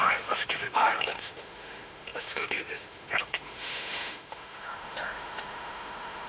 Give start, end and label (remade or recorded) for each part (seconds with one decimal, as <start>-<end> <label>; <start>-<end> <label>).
0.0-6.3 remade